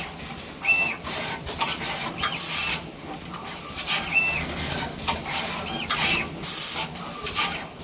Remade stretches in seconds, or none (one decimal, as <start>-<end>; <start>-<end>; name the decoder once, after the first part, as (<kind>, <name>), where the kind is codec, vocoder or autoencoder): 4.4-5.0 (codec, SNAC)